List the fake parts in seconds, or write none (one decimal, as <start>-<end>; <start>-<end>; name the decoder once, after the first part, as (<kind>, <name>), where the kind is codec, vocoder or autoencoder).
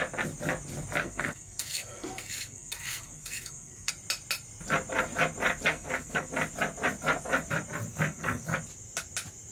1.0-3.9 (codec, SNAC); 5.7-6.3; 7.9-8.6